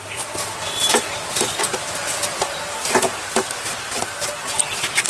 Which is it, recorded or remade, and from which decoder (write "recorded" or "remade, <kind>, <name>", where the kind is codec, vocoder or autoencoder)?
recorded